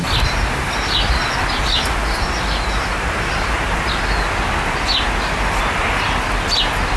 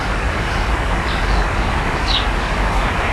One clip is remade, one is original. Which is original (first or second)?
first